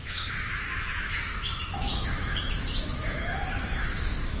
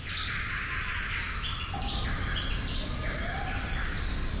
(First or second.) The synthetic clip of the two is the first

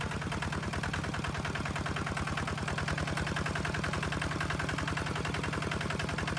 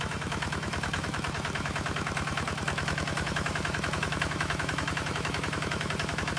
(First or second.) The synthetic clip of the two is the second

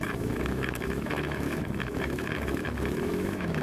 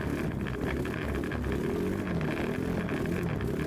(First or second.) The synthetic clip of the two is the first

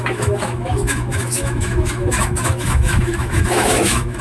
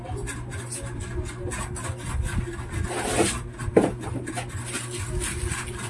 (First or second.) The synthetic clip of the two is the first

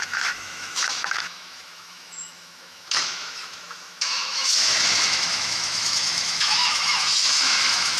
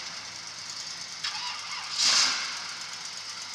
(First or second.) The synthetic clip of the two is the first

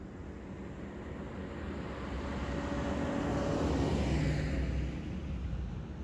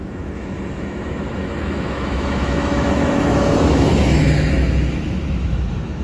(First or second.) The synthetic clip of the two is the second